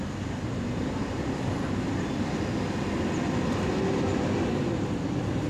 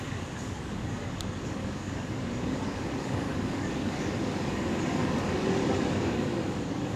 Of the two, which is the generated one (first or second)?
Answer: second